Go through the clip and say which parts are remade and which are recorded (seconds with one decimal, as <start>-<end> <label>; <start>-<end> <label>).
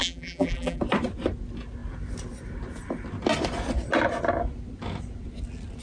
0.0-0.8 remade; 0.8-5.8 recorded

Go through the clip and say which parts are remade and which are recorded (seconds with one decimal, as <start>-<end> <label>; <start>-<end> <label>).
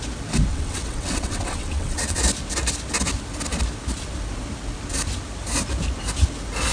0.0-0.5 recorded; 0.5-2.2 remade; 2.2-6.7 recorded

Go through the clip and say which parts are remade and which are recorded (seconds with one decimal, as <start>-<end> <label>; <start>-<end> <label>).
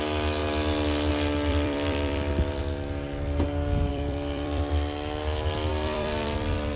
0.0-1.5 recorded; 1.5-2.6 remade; 2.6-3.9 recorded; 3.9-4.7 remade; 4.7-5.7 recorded; 5.7-6.8 remade